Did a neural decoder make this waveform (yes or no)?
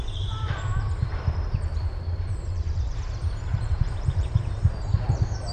yes